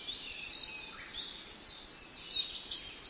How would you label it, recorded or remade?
recorded